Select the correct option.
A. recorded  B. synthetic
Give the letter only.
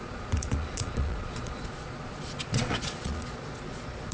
B